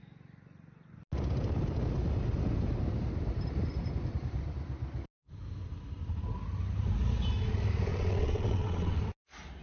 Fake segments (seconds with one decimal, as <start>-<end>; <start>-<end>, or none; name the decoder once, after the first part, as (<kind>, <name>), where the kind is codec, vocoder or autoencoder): 7.9-9.0 (vocoder, WaveNeXt)